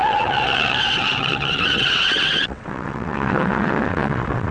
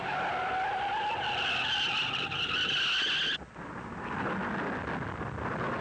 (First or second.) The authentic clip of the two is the second